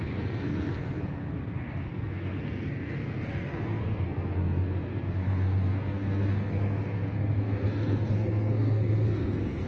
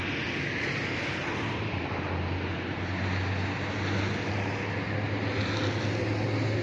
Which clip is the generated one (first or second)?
first